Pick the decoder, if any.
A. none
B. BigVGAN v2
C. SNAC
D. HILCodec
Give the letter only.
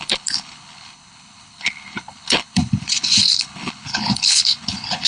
D